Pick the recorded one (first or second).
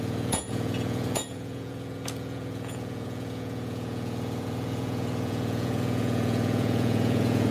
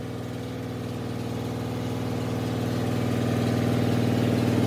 second